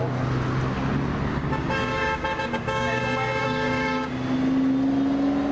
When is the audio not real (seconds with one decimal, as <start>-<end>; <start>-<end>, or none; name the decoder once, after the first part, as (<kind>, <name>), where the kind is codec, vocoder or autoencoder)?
1.3-3.0 (codec, DAC); 3.4-4.1